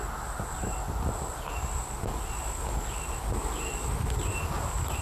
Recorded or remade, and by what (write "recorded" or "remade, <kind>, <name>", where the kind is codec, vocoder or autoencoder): recorded